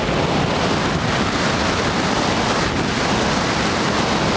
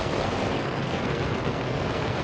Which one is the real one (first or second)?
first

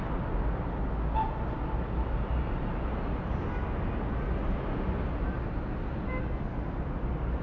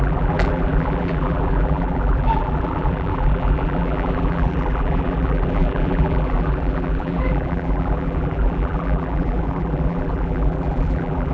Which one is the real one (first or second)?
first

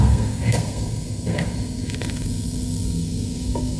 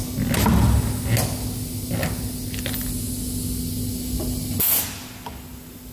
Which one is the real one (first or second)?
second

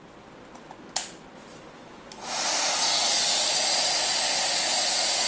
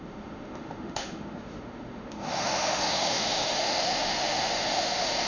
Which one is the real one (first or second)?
first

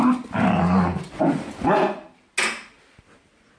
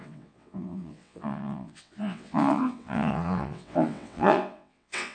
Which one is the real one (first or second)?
first